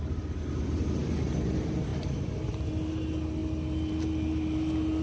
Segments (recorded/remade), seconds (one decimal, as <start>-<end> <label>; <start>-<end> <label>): 0.0-5.0 recorded